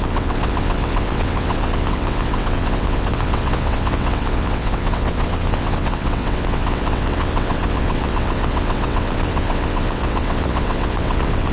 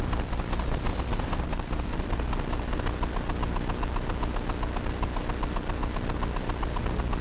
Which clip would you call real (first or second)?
second